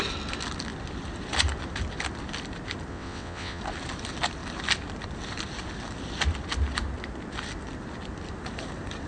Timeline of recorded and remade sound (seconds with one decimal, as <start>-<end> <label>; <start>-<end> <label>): 0.0-2.9 recorded; 2.9-3.6 remade; 3.6-9.1 recorded